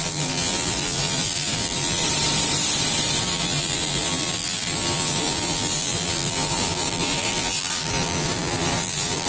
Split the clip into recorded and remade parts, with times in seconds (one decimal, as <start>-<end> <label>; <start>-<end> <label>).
0.0-2.0 remade; 2.0-3.2 recorded; 3.2-9.3 remade